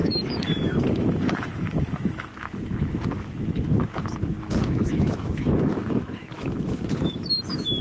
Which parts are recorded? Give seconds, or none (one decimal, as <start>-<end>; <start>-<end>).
none